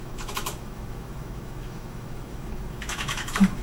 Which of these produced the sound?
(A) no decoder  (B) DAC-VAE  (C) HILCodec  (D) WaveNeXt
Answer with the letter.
B